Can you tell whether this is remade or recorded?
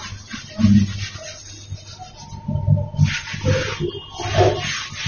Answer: recorded